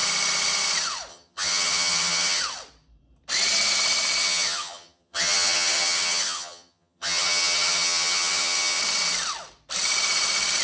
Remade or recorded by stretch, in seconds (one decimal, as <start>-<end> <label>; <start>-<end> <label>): 0.0-1.1 recorded; 1.1-2.4 remade; 2.4-4.2 recorded; 4.2-8.8 remade; 8.8-10.6 recorded